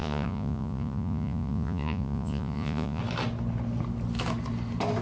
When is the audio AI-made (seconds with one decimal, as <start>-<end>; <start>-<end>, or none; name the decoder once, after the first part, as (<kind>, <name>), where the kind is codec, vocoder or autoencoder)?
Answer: 0.0-3.0 (vocoder, Vocos)